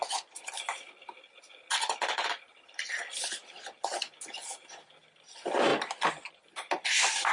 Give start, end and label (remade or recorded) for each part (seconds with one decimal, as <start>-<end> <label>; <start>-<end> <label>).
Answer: 0.0-7.3 recorded